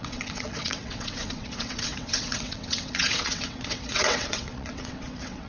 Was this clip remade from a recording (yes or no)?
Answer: yes